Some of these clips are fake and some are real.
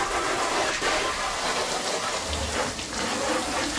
real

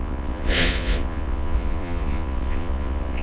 fake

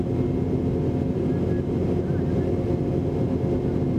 real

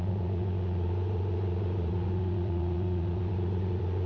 fake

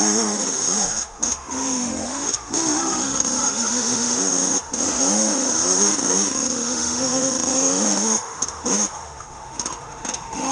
fake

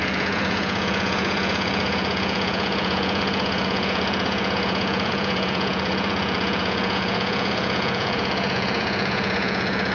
fake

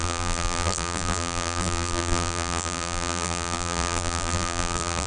fake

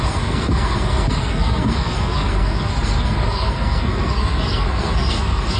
fake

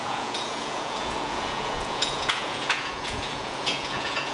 fake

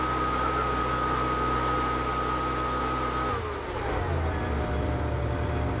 real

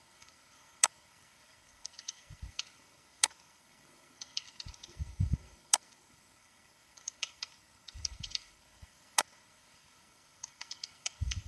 fake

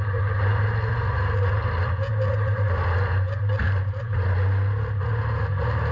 real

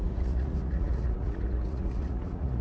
fake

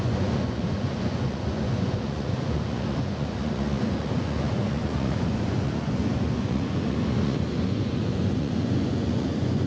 fake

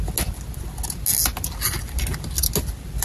real